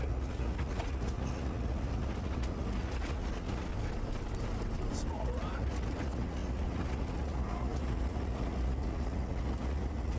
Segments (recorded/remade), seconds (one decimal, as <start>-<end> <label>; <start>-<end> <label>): 0.0-3.7 remade; 3.7-5.1 recorded; 5.1-10.2 remade